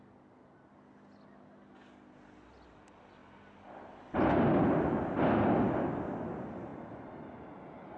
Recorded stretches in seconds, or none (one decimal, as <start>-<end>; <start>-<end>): 0.0-8.0